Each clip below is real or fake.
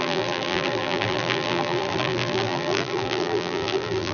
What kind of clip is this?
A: fake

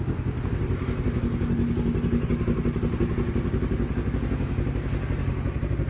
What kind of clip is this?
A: real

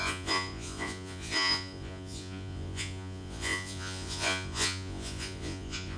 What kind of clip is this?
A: fake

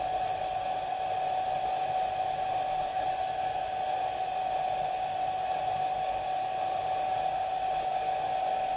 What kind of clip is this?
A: real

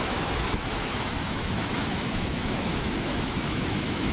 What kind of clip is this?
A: fake